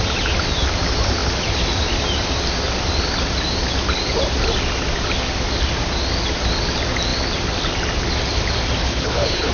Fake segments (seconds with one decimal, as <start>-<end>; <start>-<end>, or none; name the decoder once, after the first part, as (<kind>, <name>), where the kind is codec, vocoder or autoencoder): 8.8-9.5 (codec, HILCodec)